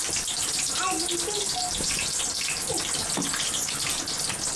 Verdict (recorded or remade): recorded